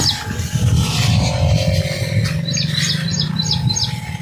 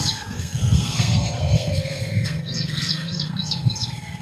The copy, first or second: second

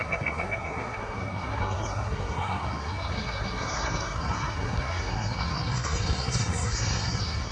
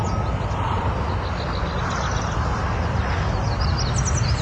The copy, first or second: first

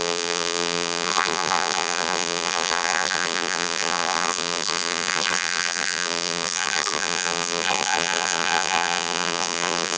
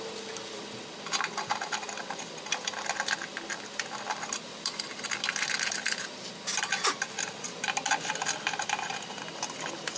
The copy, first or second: first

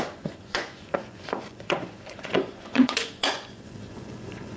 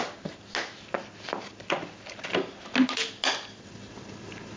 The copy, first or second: first